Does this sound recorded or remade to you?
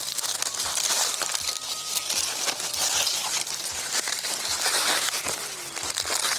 recorded